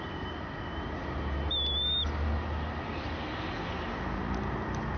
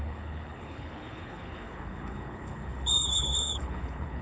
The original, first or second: first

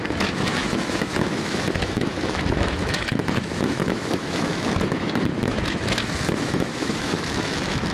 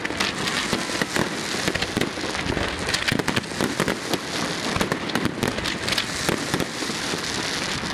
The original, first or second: second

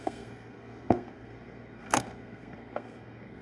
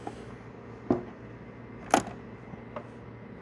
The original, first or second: second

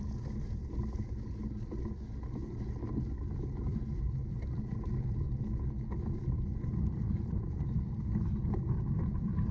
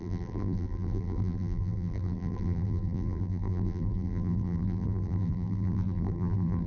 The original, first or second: first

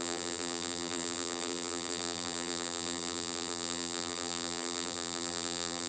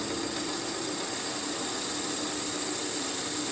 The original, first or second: second